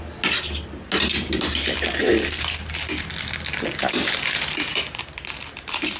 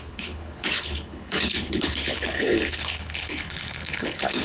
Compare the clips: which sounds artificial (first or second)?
second